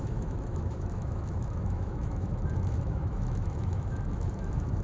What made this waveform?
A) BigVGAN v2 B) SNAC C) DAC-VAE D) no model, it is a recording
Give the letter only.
C